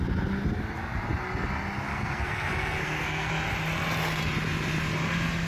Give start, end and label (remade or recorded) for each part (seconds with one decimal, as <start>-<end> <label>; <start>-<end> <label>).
0.0-1.9 recorded; 1.9-3.3 remade; 3.3-5.5 recorded